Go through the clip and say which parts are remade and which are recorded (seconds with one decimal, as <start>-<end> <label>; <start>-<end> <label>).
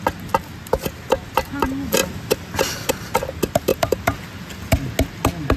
0.0-5.6 recorded